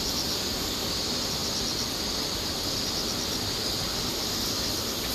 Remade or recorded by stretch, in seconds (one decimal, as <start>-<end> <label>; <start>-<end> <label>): 0.0-5.1 recorded

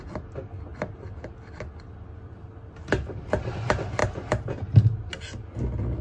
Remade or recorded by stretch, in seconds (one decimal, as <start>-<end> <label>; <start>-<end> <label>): 0.0-6.0 recorded

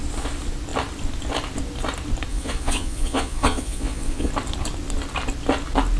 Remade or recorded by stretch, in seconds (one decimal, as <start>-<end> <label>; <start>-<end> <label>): 0.0-2.3 recorded; 2.3-4.3 remade; 4.3-6.0 recorded